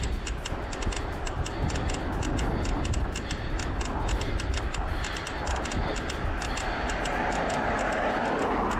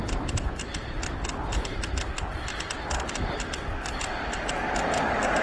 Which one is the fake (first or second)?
second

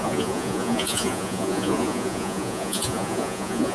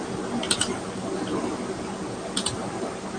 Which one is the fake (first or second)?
first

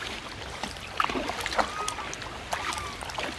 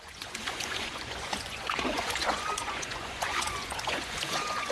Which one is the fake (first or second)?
second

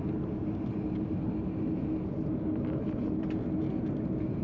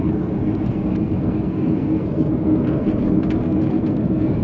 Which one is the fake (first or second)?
second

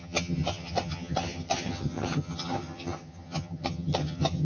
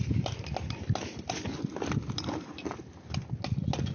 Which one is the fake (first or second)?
first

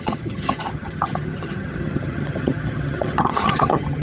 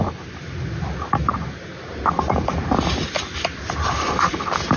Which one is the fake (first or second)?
first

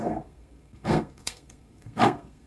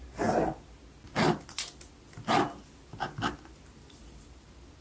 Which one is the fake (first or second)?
first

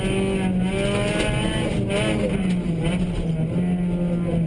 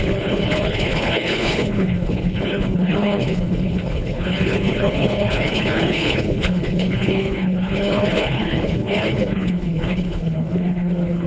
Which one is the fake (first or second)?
second